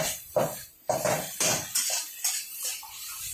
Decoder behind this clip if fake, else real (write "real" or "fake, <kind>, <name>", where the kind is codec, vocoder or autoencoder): real